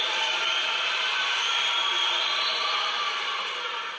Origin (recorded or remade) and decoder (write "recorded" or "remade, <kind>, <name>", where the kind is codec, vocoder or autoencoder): remade, vocoder, BigVGAN v2